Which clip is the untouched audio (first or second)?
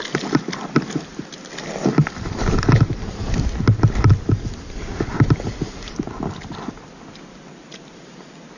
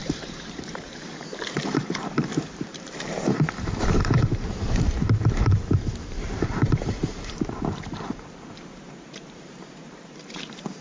first